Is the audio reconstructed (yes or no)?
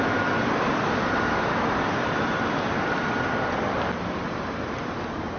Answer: no